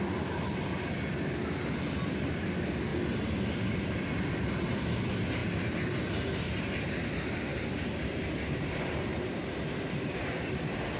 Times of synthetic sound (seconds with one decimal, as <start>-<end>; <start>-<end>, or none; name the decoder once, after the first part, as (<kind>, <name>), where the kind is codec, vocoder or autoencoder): none